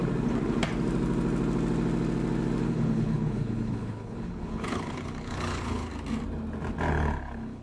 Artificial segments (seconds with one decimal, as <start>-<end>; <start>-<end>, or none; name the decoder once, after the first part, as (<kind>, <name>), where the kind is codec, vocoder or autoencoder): 2.7-5.9 (codec, HILCodec); 6.9-7.6